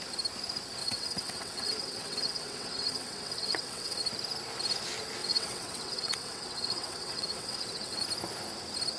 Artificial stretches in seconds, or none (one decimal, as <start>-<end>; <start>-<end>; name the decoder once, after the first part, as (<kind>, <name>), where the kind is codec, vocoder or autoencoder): 0.8-4.0 (vocoder, WaveNeXt); 5.2-8.0